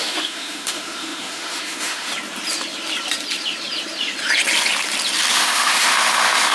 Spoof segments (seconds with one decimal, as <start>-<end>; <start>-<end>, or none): 0.0-2.1; 5.3-6.5